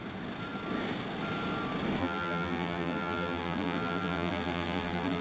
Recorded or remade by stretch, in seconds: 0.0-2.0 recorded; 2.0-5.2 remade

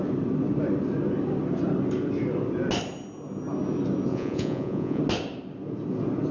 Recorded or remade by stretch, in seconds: 0.0-4.1 recorded; 4.1-5.0 remade; 5.0-6.3 recorded

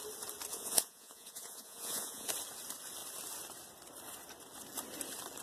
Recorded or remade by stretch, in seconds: 0.0-0.5 recorded; 0.5-2.3 remade; 2.3-5.4 recorded

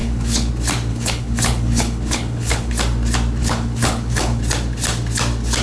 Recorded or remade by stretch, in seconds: 0.0-0.5 remade; 0.5-0.9 recorded; 0.9-2.7 remade; 2.7-3.4 recorded; 3.4-4.4 remade; 4.4-5.6 recorded

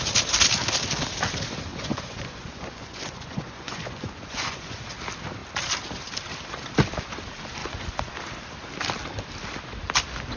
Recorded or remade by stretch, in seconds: 0.0-1.7 recorded; 1.7-4.8 remade; 4.8-7.6 recorded; 7.6-8.1 remade; 8.1-10.4 recorded

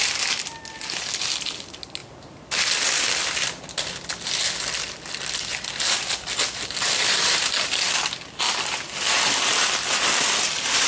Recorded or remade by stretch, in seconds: 0.0-10.9 recorded